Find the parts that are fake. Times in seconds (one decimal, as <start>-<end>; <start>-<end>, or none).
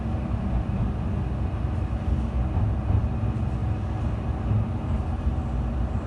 none